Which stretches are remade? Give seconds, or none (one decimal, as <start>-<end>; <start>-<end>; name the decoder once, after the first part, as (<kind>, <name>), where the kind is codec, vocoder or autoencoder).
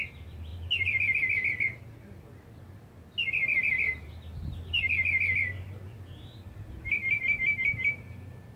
3.6-4.8 (vocoder, BigVGAN v2); 7.0-8.6